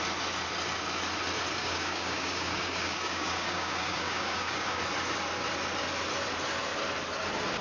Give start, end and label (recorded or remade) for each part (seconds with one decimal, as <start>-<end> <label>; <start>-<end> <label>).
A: 0.0-1.6 recorded; 1.6-4.8 remade; 4.8-7.6 recorded